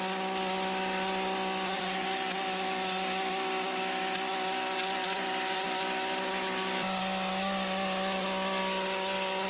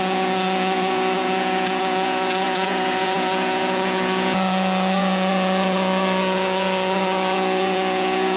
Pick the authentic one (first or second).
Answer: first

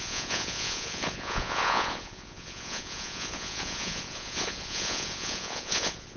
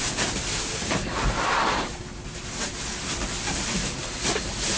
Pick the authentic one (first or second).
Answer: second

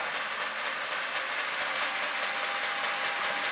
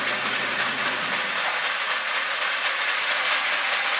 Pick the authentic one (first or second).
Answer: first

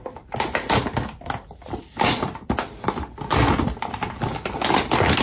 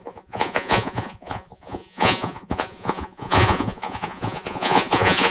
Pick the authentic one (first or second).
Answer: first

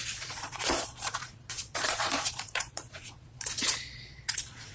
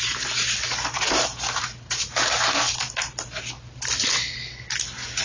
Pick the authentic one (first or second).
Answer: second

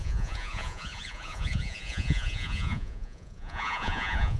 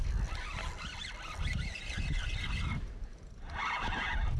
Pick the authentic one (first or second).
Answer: second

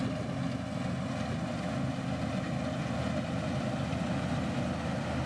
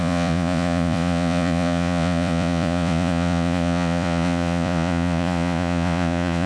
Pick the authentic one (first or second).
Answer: first